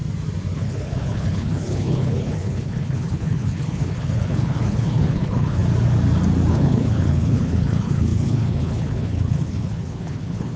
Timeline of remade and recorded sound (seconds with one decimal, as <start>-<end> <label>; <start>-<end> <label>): 0.0-0.5 recorded; 0.5-5.6 remade; 5.6-6.5 recorded; 6.5-10.6 remade